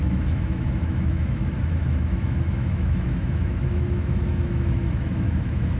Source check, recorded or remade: remade